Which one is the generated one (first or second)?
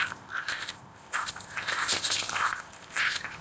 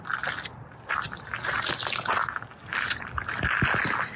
first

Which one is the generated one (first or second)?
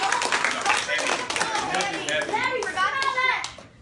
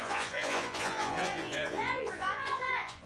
second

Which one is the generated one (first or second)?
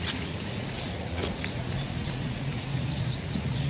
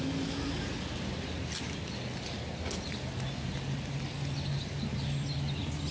first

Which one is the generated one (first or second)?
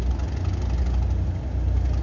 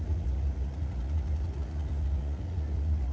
second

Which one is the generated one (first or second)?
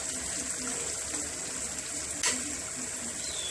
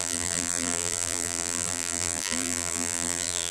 second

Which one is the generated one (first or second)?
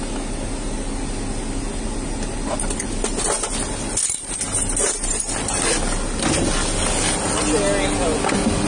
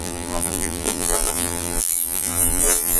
second